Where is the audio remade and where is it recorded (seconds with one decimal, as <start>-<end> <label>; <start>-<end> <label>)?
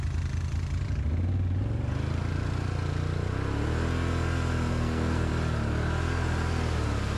0.0-4.7 recorded; 4.7-5.3 remade; 5.3-7.2 recorded